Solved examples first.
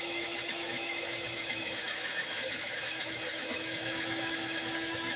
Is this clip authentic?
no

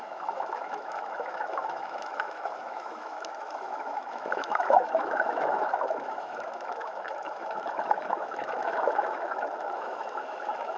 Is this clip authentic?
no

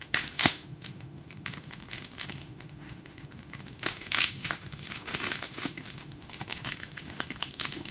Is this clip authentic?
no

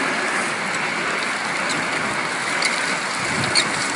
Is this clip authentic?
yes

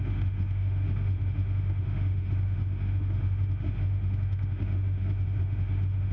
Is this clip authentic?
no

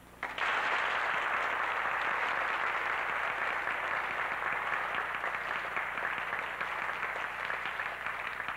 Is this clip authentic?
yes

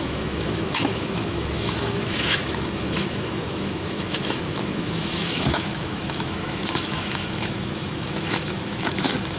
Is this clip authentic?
no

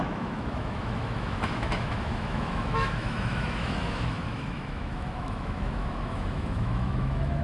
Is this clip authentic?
no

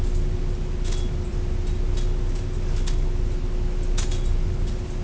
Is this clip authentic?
yes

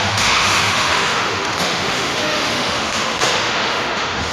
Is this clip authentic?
no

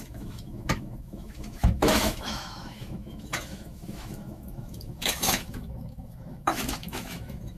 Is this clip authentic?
no